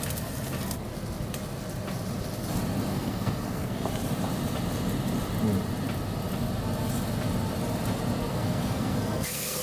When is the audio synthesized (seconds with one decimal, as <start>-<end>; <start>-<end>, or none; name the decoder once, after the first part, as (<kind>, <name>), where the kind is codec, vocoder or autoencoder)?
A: 2.9-3.9 (codec, SNAC); 8.3-9.6